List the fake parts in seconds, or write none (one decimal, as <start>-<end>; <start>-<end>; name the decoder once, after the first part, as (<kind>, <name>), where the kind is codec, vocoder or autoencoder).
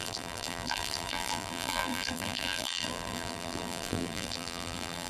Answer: 0.0-5.1 (vocoder, BigVGAN v2)